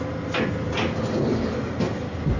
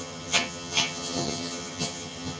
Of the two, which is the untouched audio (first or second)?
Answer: first